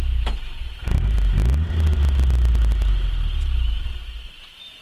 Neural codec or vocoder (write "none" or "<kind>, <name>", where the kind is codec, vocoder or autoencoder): none